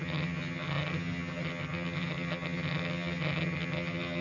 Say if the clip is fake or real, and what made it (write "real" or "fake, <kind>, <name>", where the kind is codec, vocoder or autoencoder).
fake, vocoder, HiFi-GAN